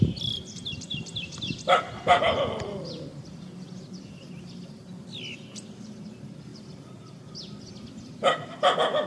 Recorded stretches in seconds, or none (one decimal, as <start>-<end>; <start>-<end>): 0.0-9.1